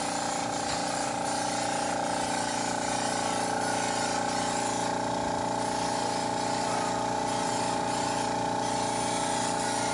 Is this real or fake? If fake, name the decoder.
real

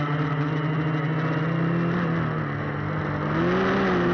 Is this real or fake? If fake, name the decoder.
real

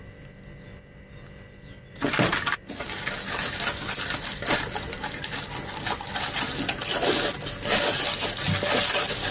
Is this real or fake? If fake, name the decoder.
real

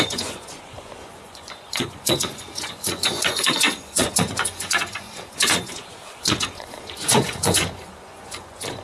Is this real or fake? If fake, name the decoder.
fake, vocoder, Vocos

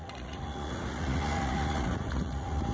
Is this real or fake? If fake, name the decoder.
fake, vocoder, Vocos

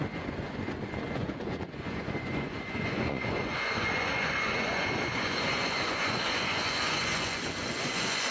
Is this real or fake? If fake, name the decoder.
fake, vocoder, Vocos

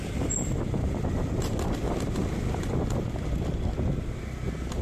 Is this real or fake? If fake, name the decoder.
real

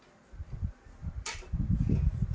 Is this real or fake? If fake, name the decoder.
real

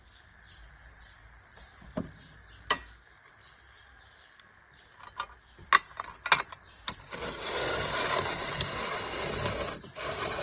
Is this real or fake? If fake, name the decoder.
real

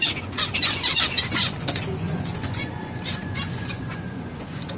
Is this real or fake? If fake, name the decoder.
fake, vocoder, Vocos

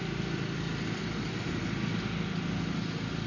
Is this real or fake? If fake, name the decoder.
real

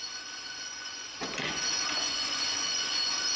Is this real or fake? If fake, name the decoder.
fake, vocoder, Vocos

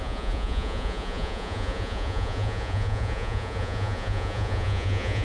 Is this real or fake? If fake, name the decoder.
fake, vocoder, Vocos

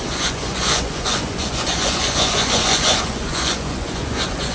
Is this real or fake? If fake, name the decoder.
fake, vocoder, Vocos